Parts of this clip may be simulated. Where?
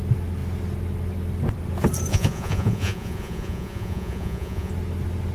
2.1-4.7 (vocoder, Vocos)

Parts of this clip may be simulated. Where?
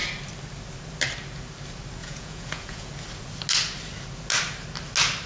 2.0-2.9 (vocoder, Vocos)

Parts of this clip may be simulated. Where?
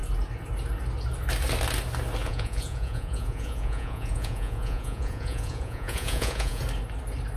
2.2-6.6 (vocoder, Vocos)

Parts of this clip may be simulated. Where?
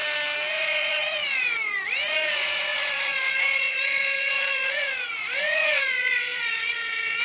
0.5-7.2 (vocoder, Vocos)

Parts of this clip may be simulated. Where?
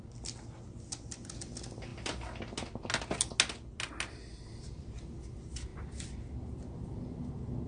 none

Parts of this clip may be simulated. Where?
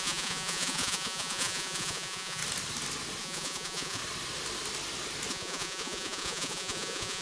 0.0-2.4 (vocoder, Vocos); 3.2-4.0; 5.3-7.2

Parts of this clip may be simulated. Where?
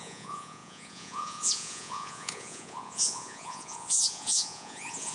0.0-5.1 (vocoder, Vocos)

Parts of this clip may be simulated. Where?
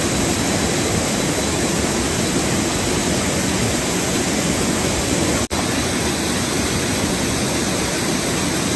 3.0-7.8 (vocoder, Vocos)